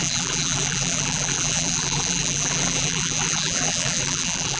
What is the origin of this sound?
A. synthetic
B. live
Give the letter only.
A